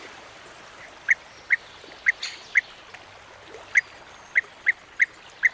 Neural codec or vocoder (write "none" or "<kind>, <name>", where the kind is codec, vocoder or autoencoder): none